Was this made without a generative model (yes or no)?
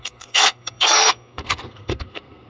no